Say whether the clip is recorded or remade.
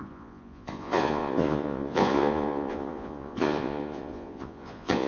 remade